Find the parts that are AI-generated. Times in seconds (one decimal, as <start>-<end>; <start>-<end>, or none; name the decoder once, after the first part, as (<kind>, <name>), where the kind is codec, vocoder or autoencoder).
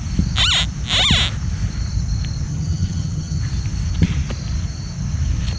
2.5-3.4 (vocoder, HiFi-GAN)